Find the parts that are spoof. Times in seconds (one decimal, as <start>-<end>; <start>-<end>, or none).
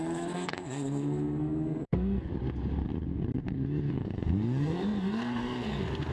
0.0-2.3; 3.9-6.1